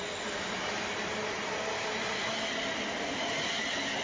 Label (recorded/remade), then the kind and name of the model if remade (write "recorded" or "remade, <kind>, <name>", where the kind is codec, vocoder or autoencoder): recorded